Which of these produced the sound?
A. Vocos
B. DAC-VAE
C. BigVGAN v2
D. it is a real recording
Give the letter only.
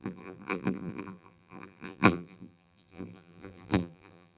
C